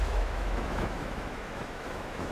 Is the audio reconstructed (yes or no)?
yes